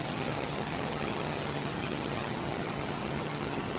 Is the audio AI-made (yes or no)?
yes